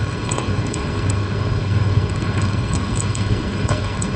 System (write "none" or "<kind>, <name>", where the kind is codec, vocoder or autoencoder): codec, SNAC